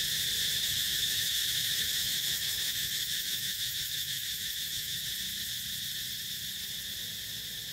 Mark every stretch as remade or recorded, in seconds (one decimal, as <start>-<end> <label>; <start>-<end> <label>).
0.0-0.6 recorded; 0.6-5.0 remade; 5.0-7.7 recorded